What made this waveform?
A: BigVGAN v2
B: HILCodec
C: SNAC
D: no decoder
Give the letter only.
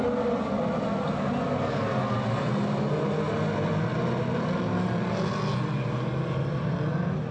D